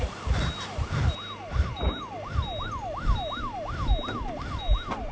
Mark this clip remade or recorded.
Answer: recorded